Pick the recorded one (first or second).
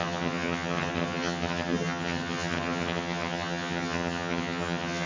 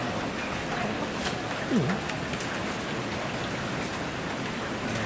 second